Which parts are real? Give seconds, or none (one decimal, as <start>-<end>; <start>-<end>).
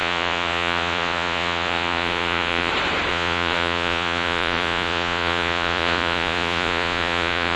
2.7-3.1